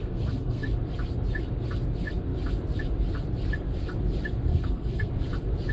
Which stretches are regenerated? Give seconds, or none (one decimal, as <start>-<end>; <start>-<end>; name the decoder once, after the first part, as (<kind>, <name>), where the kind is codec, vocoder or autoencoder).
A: 0.0-0.7 (codec, SNAC); 4.5-5.1